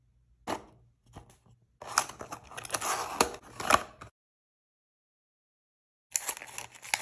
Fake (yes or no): no